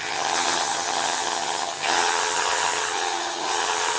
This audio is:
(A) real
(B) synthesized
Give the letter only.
B